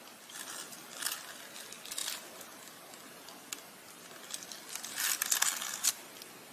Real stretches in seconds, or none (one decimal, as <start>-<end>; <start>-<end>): 0.0-6.5